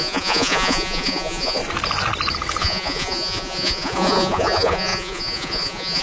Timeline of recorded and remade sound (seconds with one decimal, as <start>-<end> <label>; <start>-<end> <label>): 0.0-1.6 remade; 1.6-2.6 recorded; 2.6-6.0 remade